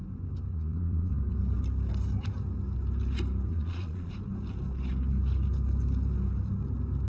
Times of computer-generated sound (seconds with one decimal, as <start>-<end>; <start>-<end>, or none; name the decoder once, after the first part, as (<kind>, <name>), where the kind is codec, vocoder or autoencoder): 0.5-1.1 (vocoder, Vocos); 3.5-4.1